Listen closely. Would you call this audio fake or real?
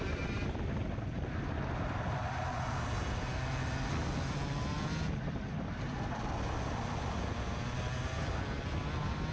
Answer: real